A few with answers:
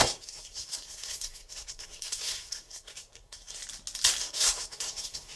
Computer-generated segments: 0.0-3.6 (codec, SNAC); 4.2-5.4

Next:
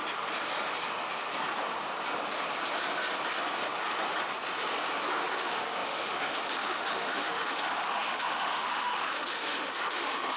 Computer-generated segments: 5.3-10.4 (autoencoder, DAC-VAE)

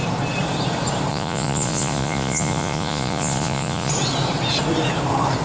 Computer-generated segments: 1.1-3.9 (vocoder, Vocos)

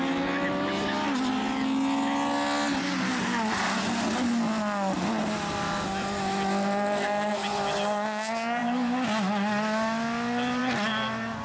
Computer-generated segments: none

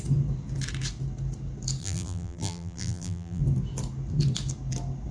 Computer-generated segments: 1.8-3.4 (vocoder, BigVGAN v2)

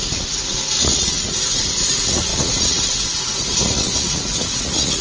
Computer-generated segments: 0.0-5.0 (vocoder, Vocos)